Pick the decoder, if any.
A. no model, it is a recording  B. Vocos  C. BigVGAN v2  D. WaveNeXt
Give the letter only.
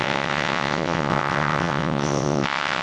D